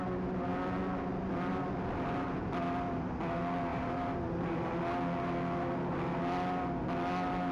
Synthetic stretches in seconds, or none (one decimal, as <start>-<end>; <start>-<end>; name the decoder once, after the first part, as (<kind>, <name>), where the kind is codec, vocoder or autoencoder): 3.7-4.7 (vocoder, BigVGAN v2)

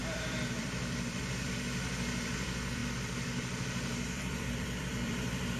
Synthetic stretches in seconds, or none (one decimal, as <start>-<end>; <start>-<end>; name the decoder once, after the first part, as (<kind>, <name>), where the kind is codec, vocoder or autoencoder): 0.0-5.6 (vocoder, BigVGAN v2)